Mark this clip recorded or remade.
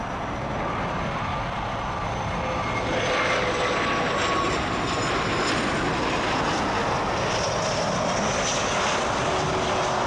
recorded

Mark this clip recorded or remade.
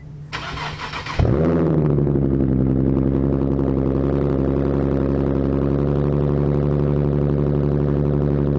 recorded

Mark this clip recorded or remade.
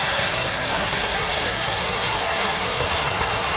remade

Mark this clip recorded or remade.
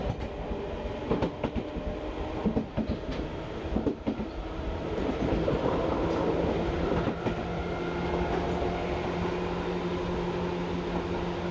recorded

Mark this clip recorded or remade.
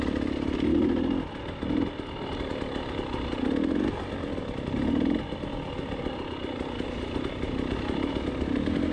recorded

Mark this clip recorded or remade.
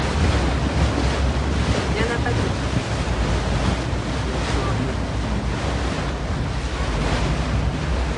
recorded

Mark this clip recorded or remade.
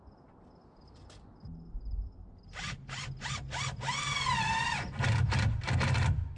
recorded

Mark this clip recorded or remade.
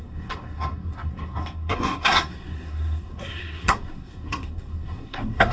remade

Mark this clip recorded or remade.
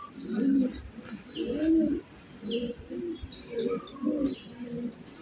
recorded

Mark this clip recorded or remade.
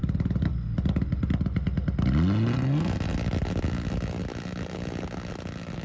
recorded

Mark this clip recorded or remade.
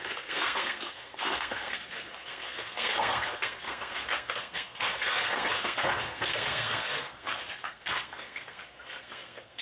remade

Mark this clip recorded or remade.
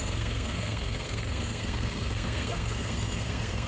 remade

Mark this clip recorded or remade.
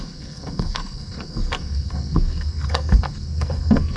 remade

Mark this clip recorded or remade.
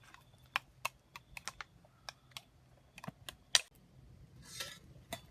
recorded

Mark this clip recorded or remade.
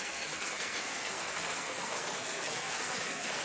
remade